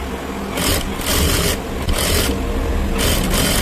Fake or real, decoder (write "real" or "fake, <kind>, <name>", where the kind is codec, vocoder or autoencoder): real